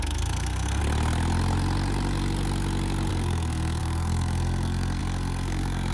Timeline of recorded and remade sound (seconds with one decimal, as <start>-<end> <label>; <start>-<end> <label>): 0.0-0.8 remade; 0.8-3.1 recorded; 3.1-5.9 remade